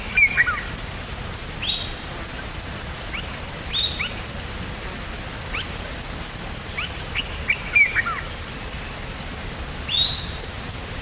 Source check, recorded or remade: recorded